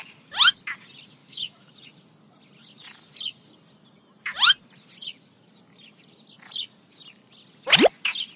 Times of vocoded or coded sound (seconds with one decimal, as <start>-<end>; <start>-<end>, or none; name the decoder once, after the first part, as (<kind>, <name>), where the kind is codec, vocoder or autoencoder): 1.2-1.7 (autoencoder, DAC-VAE)